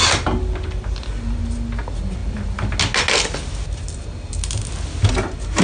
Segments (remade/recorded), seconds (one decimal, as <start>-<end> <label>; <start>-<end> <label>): 0.0-5.6 recorded